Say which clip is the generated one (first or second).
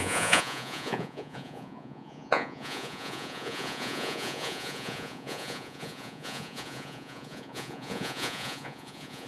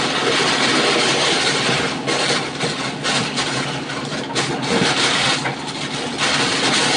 first